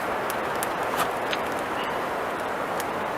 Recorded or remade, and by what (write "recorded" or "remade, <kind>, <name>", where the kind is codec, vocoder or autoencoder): recorded